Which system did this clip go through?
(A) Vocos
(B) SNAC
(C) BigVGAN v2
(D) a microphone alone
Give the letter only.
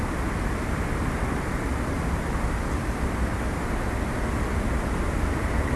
D